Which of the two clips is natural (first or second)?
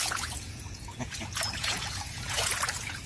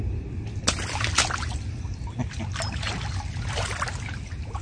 second